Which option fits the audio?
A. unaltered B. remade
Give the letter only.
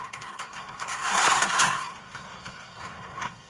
B